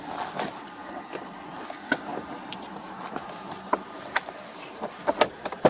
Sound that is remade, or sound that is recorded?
recorded